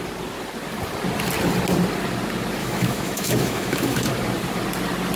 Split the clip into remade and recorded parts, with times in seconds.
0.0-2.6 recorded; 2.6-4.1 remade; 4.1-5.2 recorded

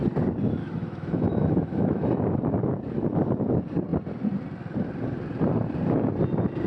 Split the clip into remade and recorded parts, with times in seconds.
0.0-0.6 recorded; 0.6-2.2 remade; 2.2-6.7 recorded